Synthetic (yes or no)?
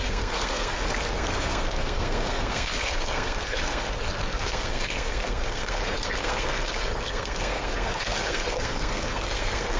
yes